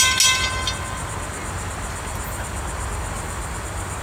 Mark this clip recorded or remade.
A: recorded